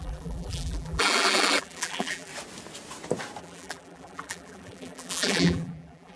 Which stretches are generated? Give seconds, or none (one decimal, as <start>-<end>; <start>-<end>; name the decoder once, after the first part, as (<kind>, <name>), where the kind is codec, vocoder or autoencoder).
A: 0.0-2.3 (vocoder, BigVGAN v2); 3.4-6.2

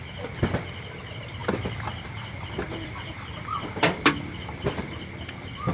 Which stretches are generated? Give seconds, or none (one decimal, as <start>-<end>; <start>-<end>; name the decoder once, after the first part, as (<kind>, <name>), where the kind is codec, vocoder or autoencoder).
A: 1.4-4.8 (vocoder, BigVGAN v2)

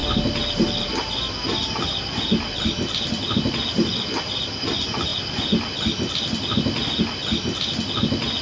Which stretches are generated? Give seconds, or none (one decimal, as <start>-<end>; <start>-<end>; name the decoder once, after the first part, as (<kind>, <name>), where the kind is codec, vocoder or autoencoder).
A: none

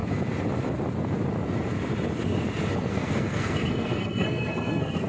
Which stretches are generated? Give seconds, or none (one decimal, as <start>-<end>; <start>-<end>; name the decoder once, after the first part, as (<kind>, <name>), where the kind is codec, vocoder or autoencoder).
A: 2.9-5.1 (codec, SNAC)

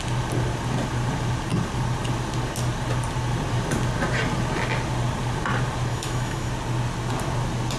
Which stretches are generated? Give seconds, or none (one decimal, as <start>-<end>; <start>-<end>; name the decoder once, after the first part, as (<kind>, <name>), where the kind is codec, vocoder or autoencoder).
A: 5.9-6.5 (autoencoder, DAC-VAE)

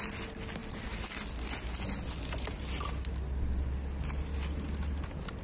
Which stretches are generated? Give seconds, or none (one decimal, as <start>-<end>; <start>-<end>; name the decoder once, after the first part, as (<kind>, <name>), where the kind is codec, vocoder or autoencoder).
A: none